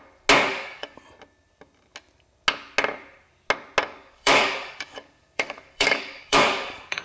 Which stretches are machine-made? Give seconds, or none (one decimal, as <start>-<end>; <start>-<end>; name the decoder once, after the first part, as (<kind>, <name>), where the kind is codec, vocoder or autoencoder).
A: 0.5-1.0 (codec, DAC); 3.8-7.0